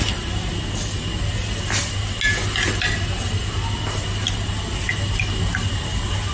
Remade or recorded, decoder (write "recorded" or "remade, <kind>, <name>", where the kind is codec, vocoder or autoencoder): recorded